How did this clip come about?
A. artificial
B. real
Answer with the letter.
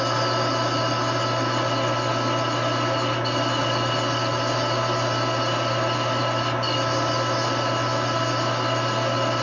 B